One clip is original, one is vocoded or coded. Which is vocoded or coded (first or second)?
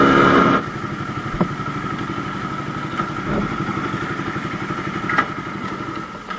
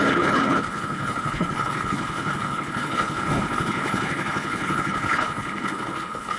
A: second